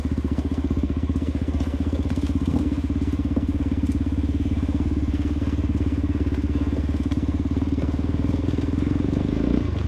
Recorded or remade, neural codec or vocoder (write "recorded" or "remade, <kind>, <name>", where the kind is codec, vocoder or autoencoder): remade, codec, SNAC